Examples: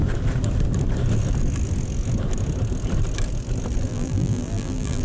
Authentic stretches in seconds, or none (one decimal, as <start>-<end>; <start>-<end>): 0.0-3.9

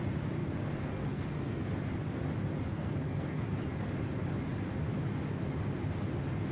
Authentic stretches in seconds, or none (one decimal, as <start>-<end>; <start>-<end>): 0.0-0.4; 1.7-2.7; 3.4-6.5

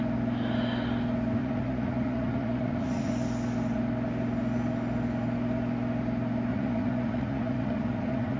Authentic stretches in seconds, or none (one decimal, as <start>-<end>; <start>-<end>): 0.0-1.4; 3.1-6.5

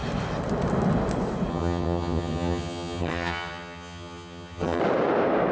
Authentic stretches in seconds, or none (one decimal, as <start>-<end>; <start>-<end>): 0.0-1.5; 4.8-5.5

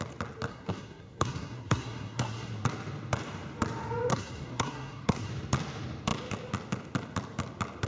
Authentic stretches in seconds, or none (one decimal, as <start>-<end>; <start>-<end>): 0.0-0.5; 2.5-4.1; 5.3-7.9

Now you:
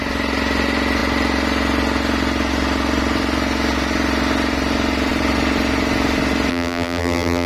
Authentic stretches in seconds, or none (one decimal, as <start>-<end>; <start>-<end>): 0.0-6.5

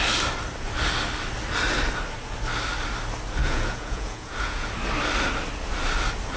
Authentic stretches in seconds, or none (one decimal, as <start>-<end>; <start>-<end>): 0.0-3.4; 4.7-6.4